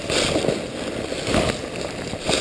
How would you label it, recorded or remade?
recorded